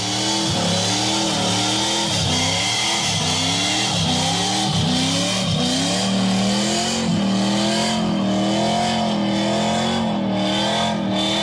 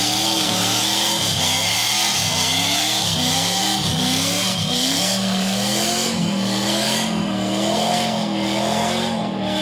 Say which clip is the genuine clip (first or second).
first